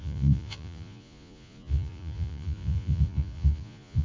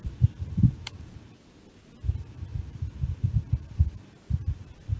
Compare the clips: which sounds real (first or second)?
second